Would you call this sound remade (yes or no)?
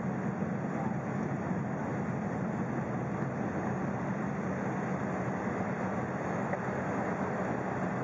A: no